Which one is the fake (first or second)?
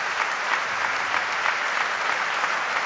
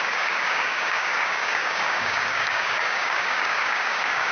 second